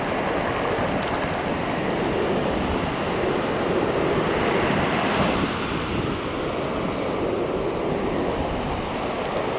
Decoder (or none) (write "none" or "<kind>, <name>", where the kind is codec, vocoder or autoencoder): none